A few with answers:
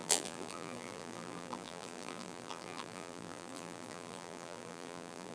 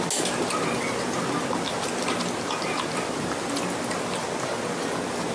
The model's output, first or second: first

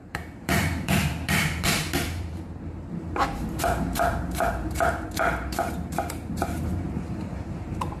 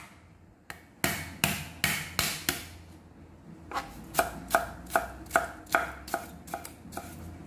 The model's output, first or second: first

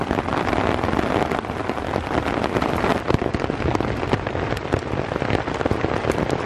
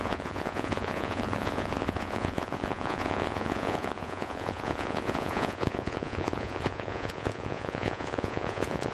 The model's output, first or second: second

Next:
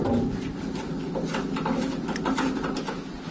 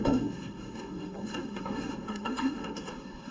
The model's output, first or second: second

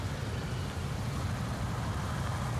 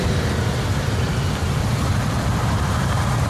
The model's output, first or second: second